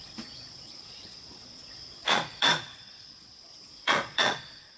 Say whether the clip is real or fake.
fake